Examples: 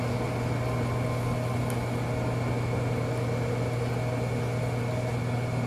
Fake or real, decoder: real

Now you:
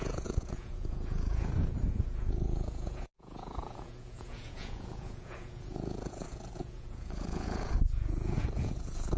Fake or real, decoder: fake, vocoder, Vocos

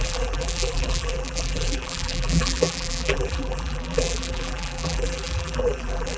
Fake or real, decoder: fake, vocoder, BigVGAN v2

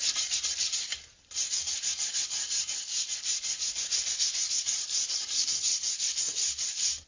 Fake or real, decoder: real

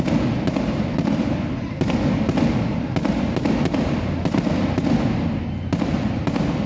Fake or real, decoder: real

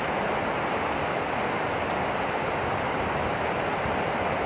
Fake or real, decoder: real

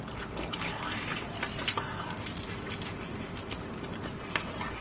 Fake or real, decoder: real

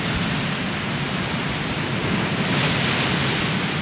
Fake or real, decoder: real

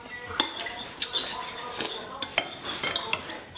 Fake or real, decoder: real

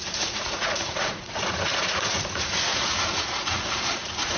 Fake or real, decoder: fake, vocoder, Vocos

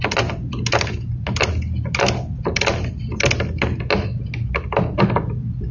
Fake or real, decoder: real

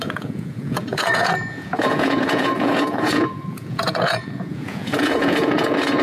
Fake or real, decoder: fake, vocoder, Vocos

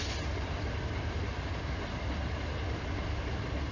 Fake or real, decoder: real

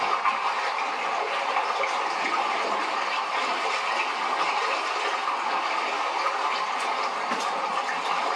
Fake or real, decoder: real